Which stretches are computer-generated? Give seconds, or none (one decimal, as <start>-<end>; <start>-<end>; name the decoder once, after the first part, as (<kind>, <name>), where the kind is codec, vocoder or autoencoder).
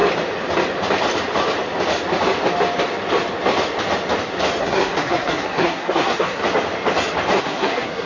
4.6-6.4 (codec, SNAC); 7.4-8.1